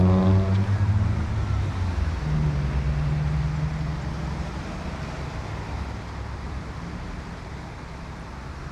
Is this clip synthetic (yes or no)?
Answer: no